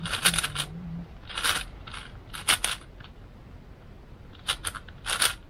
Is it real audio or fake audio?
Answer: real